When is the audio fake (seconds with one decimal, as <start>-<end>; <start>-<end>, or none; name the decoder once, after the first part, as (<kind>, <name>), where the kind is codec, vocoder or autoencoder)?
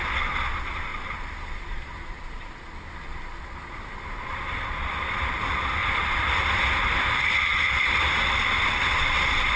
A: 0.9-2.5 (vocoder, BigVGAN v2); 5.8-8.9